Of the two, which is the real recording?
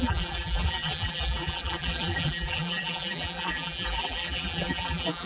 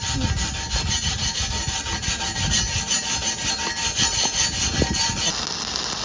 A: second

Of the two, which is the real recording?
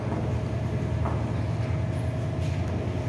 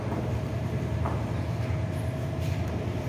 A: first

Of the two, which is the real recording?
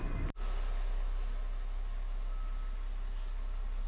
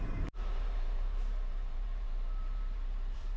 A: first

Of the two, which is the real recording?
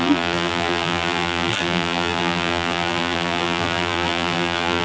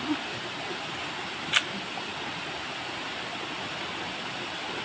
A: second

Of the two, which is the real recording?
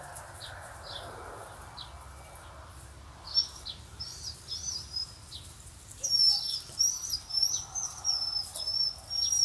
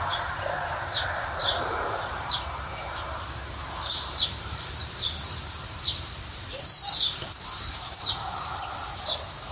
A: first